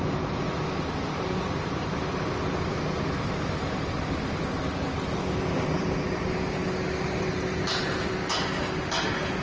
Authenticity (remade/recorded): recorded